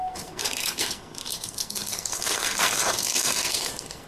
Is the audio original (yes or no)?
no